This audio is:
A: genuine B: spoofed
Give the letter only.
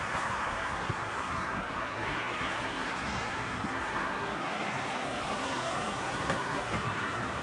B